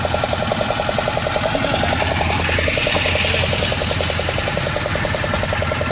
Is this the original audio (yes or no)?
yes